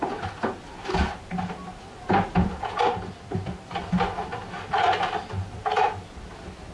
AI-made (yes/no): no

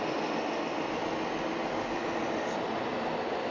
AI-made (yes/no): no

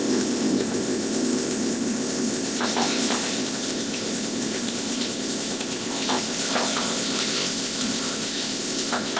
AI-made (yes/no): yes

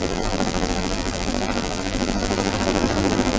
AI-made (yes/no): yes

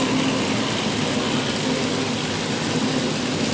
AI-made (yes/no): no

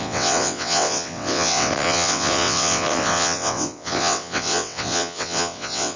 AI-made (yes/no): yes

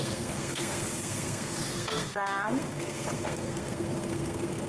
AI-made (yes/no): yes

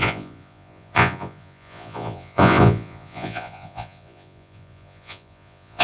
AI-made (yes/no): yes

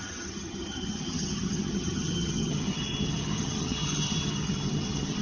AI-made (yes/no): yes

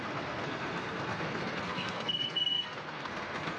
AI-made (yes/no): yes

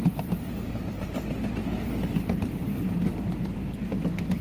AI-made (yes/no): yes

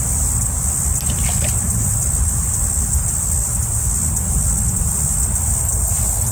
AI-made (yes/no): no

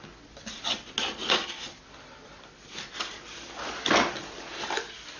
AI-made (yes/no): no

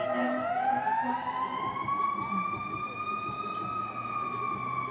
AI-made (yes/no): no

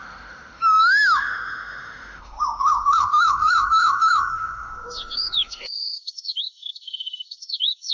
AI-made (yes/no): yes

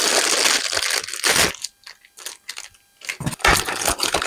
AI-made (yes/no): no